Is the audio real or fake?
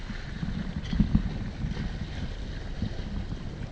real